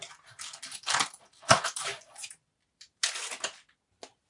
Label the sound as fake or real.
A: real